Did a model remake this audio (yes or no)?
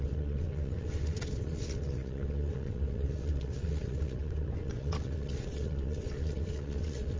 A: yes